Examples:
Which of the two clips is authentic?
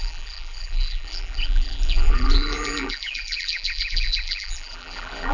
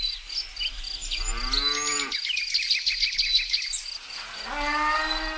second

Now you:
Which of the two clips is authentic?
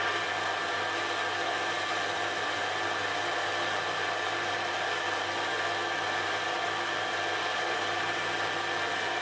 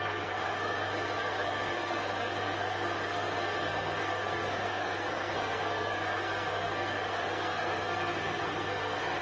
first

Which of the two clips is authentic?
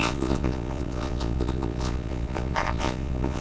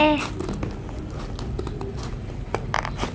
second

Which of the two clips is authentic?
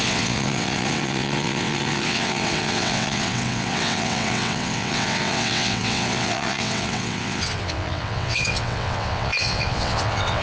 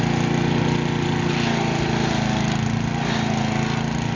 second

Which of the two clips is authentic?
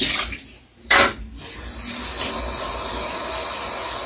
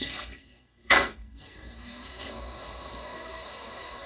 first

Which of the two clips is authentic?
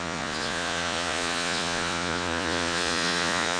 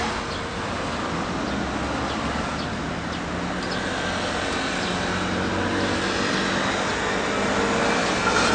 second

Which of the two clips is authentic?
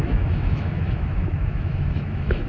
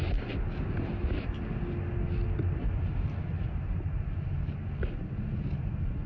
second